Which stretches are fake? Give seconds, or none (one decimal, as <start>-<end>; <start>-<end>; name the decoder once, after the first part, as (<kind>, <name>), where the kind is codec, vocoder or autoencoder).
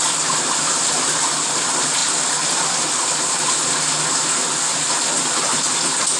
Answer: none